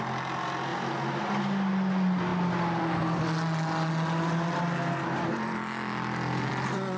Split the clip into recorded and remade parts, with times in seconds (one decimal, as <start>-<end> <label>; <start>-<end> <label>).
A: 0.0-7.0 recorded

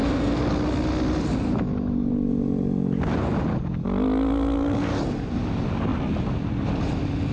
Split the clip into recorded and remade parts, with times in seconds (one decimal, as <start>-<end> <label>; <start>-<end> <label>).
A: 0.0-0.5 remade; 0.5-7.3 recorded

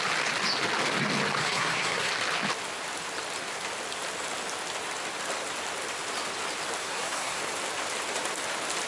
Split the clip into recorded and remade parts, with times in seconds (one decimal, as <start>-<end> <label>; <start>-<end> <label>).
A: 0.0-1.4 recorded; 1.4-2.1 remade; 2.1-6.8 recorded; 6.8-7.4 remade; 7.4-8.9 recorded